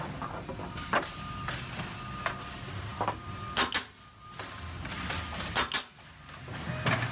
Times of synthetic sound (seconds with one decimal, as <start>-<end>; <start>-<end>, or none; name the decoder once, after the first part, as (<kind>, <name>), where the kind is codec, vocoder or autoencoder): none